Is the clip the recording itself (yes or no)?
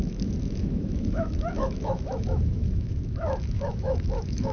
no